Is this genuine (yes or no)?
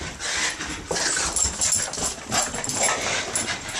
yes